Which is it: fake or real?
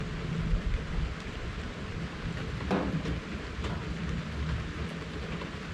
real